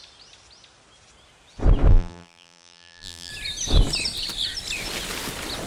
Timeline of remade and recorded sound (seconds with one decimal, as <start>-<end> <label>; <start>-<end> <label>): 0.0-1.9 recorded; 1.9-3.3 remade; 3.3-5.7 recorded